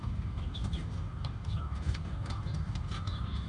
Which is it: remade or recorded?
remade